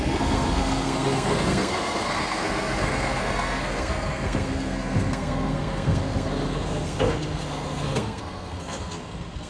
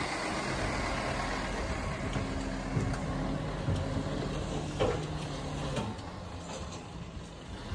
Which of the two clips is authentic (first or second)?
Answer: second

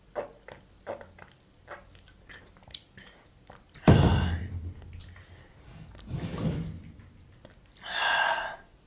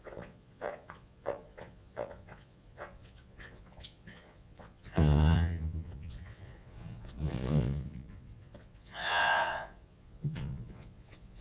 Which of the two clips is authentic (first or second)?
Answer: first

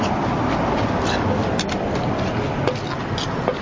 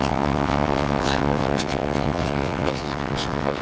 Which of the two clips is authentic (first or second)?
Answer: first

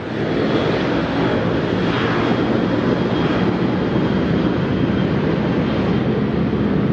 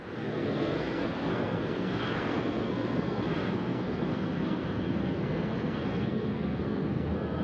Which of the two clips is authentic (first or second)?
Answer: first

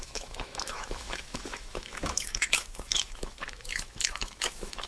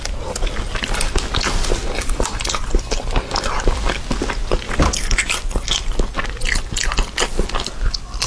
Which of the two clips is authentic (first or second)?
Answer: second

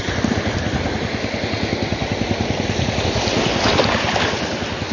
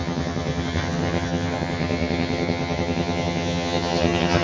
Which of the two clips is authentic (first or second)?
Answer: first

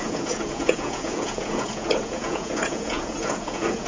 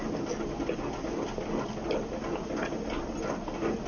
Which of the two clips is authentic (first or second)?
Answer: second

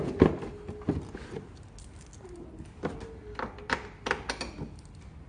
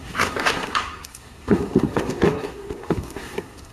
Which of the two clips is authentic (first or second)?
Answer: first